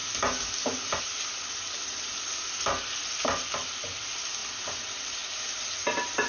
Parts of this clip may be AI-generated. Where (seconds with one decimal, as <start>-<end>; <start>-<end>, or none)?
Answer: none